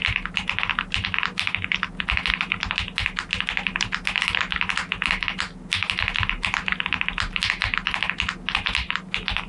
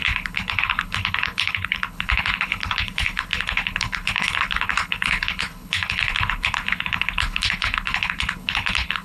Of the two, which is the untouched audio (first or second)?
first